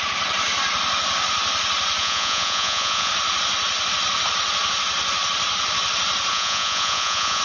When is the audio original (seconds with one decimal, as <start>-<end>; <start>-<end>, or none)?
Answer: 0.0-2.0; 3.1-6.3